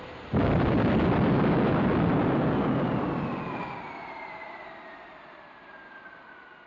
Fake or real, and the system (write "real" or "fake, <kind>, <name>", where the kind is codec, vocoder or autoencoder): real